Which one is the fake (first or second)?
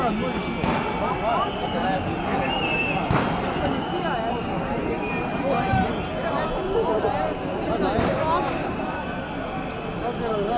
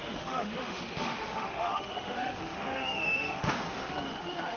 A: second